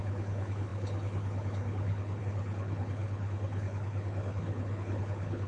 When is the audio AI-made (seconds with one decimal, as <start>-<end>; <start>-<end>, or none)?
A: 0.0-5.5